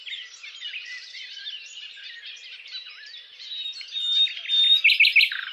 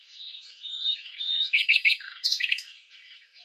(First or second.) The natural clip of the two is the first